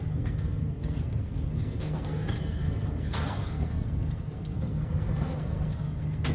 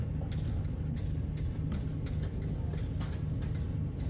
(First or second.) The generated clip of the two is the first